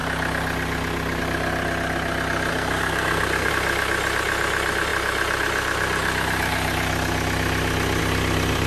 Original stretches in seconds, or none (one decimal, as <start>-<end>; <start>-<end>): 0.0-2.5; 3.5-8.7